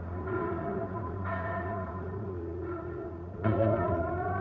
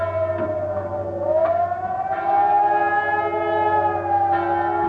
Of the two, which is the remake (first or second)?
first